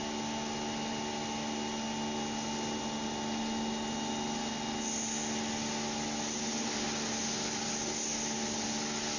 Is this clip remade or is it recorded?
recorded